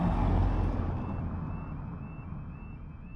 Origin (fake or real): real